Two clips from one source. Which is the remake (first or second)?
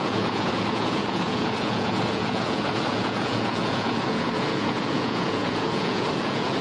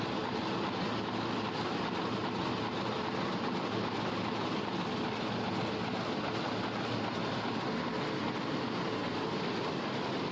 first